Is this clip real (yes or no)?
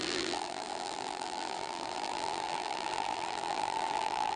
no